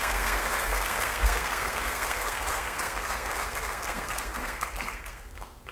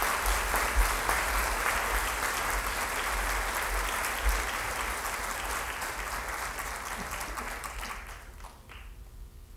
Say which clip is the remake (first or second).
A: first